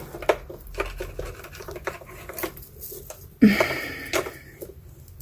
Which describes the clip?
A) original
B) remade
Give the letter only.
A